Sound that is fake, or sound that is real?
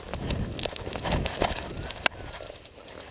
real